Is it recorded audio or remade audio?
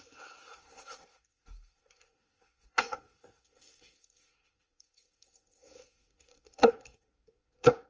remade